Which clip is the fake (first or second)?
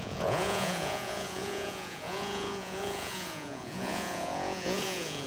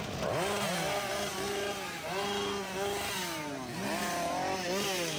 first